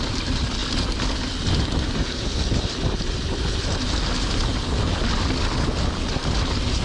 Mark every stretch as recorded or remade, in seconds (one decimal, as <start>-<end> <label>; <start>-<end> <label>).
0.0-6.8 recorded